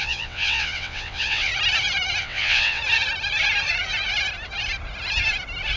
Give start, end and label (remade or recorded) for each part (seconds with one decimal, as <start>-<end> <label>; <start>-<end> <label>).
0.0-1.5 remade; 1.5-2.2 recorded; 2.2-2.8 remade; 2.8-5.8 recorded

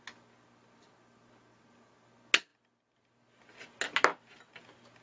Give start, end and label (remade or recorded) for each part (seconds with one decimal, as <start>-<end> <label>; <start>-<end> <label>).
0.0-5.0 recorded

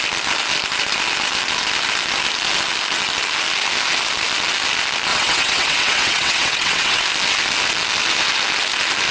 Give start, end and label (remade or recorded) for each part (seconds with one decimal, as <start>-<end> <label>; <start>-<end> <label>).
0.0-5.1 recorded; 5.1-7.0 remade; 7.0-9.1 recorded

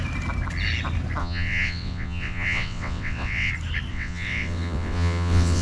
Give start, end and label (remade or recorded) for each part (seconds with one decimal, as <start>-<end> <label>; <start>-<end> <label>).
0.0-1.2 recorded; 1.2-3.5 remade; 3.5-3.9 recorded; 3.9-5.6 remade

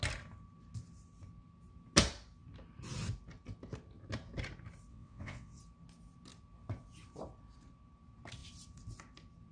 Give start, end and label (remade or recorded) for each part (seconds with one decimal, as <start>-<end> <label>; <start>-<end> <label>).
0.0-4.9 recorded; 4.9-5.6 remade; 5.6-9.5 recorded

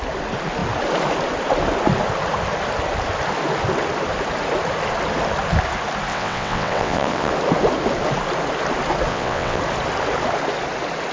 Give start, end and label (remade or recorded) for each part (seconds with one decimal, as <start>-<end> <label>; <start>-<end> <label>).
0.0-6.1 recorded; 6.1-7.3 remade; 7.3-9.1 recorded; 9.1-9.6 remade; 9.6-11.1 recorded

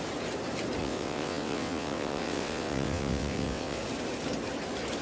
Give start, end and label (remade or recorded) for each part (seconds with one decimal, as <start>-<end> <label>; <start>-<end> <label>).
0.0-0.8 recorded; 0.8-3.8 remade; 3.8-5.0 recorded

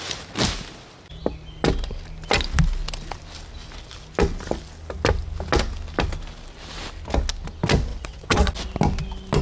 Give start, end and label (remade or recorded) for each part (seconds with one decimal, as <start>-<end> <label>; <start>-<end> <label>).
0.0-7.9 recorded; 7.9-8.5 remade; 8.5-9.4 recorded